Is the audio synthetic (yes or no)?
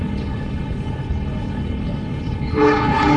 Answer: yes